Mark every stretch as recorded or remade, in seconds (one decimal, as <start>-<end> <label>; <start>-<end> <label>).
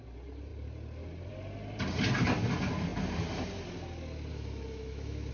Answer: 0.0-4.3 recorded; 4.3-5.3 remade